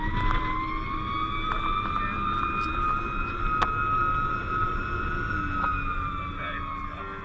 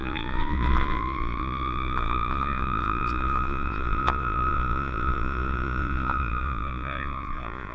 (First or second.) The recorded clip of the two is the first